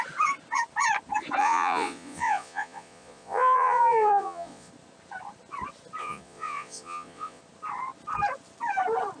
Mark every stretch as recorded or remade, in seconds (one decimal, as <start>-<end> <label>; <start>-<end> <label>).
0.0-1.4 recorded; 1.4-4.7 remade; 4.7-6.0 recorded; 6.0-7.4 remade; 7.4-9.2 recorded